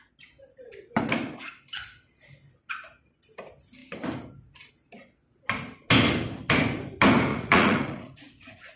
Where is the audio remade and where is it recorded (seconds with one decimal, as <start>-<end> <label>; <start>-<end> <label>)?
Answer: 0.0-7.3 recorded; 7.3-8.8 remade